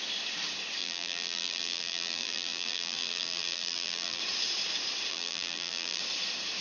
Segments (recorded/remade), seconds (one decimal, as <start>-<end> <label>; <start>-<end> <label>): 0.0-0.8 recorded; 0.8-4.2 remade; 4.2-5.1 recorded; 5.1-6.0 remade; 6.0-6.6 recorded